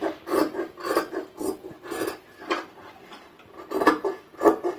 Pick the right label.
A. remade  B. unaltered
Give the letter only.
B